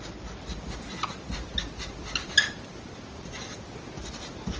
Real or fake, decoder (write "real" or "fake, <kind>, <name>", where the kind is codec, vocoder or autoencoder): real